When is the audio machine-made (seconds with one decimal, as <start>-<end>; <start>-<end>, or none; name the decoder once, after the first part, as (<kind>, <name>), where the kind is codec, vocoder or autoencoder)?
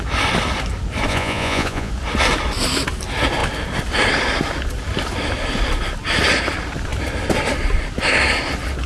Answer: 1.1-1.9 (vocoder, Vocos)